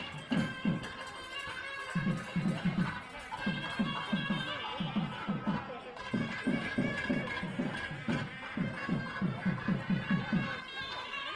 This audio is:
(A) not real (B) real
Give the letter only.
B